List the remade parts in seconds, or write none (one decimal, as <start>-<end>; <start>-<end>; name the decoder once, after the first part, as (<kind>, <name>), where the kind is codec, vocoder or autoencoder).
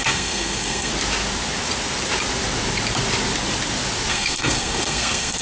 0.0-0.9 (codec, SNAC); 4.1-5.4